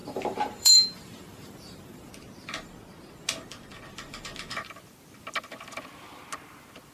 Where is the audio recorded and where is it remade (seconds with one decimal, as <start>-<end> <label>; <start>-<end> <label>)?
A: 0.0-2.1 remade; 2.1-6.9 recorded